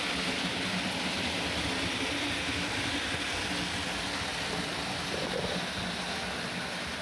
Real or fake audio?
real